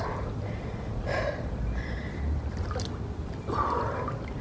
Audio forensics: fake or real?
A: fake